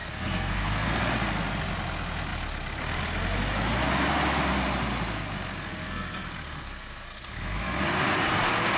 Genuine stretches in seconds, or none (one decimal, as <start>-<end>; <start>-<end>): 1.0-5.7; 7.8-8.8